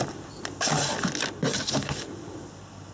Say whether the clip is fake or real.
real